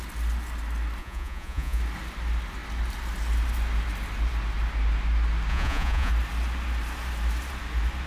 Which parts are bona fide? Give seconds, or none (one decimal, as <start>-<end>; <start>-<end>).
0.0-1.0; 1.8-5.5; 6.1-8.1